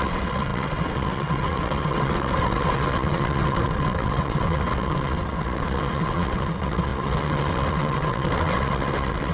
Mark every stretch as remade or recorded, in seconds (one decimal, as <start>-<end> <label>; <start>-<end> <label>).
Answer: 0.0-9.3 remade